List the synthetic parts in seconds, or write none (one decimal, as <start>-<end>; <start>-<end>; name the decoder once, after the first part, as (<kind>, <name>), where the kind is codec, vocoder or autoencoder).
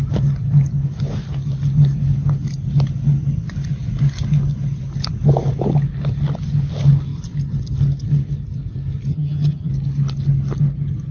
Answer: 9.1-9.7 (vocoder, HiFi-GAN)